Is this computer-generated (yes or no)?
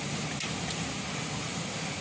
no